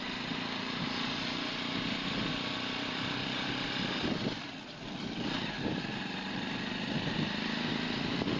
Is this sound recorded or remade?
recorded